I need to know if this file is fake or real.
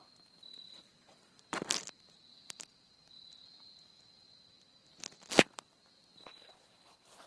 fake